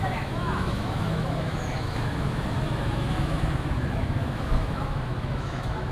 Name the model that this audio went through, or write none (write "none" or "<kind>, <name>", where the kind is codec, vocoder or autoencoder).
autoencoder, DAC-VAE